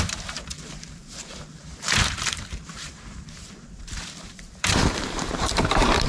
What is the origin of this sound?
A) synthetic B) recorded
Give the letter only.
A